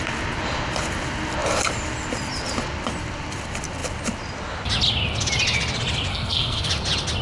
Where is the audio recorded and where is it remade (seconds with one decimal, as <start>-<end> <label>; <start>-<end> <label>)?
0.0-6.1 recorded; 6.1-6.7 remade; 6.7-7.2 recorded